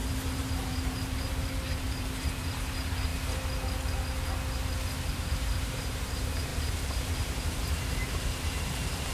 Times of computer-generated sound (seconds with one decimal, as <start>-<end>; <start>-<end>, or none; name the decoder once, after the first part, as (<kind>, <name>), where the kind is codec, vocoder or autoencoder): 0.0-3.1 (vocoder, BigVGAN v2); 5.1-9.1